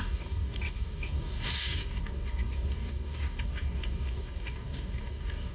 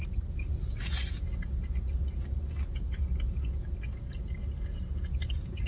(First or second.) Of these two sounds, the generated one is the first